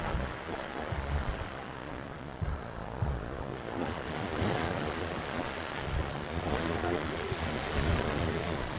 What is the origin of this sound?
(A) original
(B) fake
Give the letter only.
B